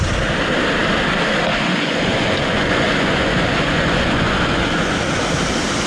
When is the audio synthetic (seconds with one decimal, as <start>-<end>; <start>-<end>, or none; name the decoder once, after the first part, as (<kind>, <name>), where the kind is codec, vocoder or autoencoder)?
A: 1.5-5.0 (vocoder, Vocos)